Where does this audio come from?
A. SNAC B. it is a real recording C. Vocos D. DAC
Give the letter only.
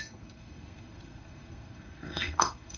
A